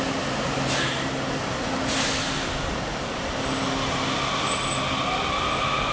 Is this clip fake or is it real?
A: real